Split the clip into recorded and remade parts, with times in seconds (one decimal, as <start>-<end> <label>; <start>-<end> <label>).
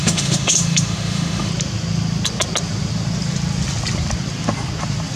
0.0-1.5 remade; 1.5-5.2 recorded